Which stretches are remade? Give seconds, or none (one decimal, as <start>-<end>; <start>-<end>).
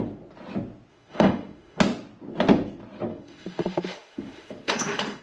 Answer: 0.9-1.8; 3.1-5.2